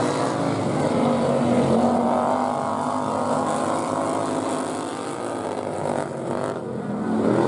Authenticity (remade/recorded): recorded